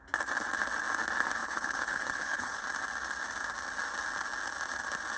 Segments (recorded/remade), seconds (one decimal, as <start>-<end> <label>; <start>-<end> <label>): 0.0-1.4 recorded; 1.4-2.6 remade; 2.6-5.2 recorded